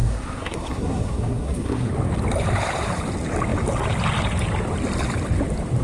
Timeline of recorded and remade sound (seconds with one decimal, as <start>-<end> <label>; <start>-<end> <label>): 0.0-1.9 remade; 1.9-5.8 recorded